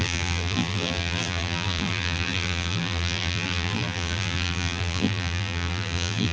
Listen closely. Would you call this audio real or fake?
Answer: fake